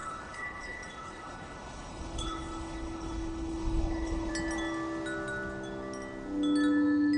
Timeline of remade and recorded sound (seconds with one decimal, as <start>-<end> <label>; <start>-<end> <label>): 0.0-4.3 remade; 4.3-7.2 recorded